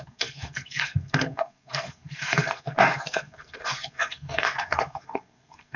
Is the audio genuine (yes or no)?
no